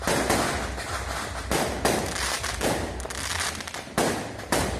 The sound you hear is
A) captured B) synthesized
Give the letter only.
A